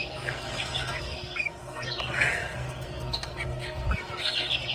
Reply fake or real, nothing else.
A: fake